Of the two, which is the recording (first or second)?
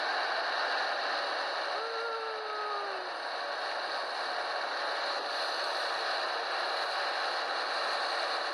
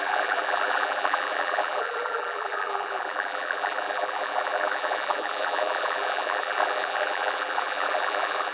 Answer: first